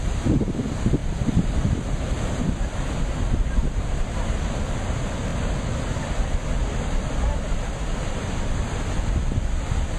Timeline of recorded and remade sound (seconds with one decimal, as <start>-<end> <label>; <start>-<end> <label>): 0.0-1.0 recorded; 1.0-4.7 remade; 4.7-10.0 recorded